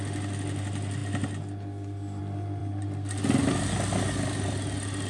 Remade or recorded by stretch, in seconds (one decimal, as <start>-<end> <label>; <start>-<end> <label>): 0.0-5.1 recorded